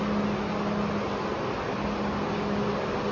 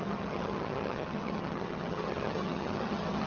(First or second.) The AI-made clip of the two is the second